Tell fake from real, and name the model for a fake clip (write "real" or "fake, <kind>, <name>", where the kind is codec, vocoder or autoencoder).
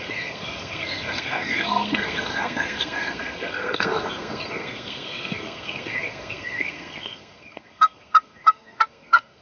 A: fake, codec, SNAC